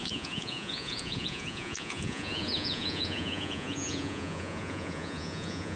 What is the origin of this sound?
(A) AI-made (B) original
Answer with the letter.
A